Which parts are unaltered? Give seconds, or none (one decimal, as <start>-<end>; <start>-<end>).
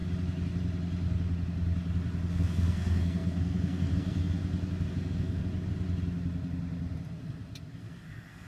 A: 0.0-2.3; 4.4-4.9; 5.4-7.8